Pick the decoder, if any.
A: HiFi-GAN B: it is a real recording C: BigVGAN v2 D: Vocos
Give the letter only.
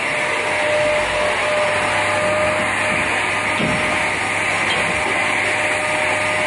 B